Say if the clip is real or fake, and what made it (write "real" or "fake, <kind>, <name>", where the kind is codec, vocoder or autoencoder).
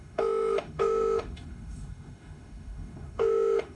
fake, autoencoder, DAC-VAE